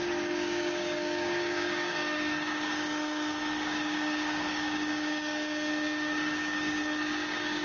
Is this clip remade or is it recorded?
remade